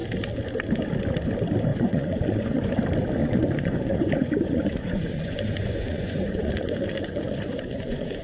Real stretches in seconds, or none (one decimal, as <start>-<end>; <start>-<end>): 0.0-1.7; 2.7-3.2